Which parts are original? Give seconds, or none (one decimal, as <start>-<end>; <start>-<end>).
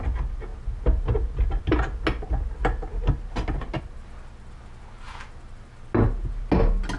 0.0-7.0